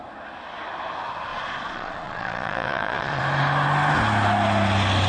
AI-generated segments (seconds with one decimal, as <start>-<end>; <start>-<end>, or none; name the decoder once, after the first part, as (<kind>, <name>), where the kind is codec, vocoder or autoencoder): 1.3-3.2 (vocoder, Vocos)